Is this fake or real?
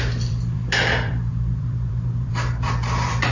fake